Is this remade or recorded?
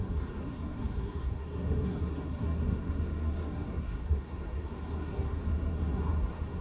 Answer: remade